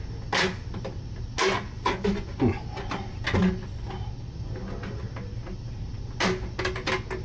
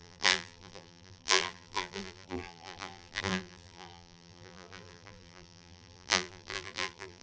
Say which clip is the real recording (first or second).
first